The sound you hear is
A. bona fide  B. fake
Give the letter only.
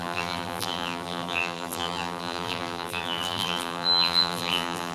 B